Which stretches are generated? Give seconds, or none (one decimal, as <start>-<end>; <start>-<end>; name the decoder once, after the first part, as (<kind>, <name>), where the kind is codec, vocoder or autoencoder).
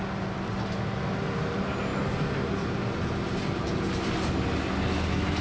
none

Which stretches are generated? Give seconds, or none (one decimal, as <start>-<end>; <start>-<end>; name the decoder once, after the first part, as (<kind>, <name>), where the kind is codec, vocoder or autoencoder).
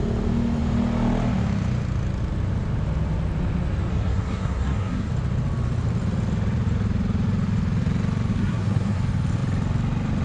3.9-5.1 (codec, SNAC); 8.3-9.0